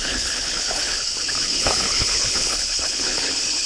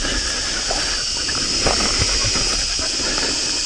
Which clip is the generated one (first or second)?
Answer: first